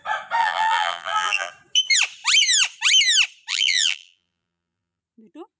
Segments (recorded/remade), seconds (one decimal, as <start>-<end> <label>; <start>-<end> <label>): 0.0-0.4 recorded; 0.4-1.5 remade; 1.5-3.5 recorded; 3.5-5.0 remade; 5.0-5.6 recorded